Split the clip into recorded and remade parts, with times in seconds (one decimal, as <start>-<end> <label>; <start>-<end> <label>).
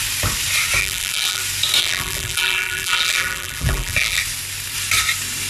0.0-0.8 recorded; 0.8-1.4 remade; 1.4-1.8 recorded; 1.8-4.2 remade; 4.2-5.5 recorded